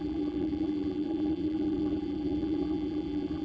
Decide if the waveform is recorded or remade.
remade